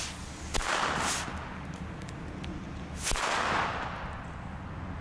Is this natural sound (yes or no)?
yes